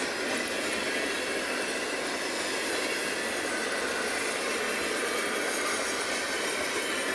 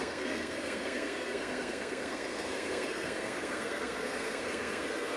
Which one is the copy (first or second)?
second